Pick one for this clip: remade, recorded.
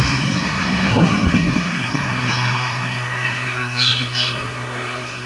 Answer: remade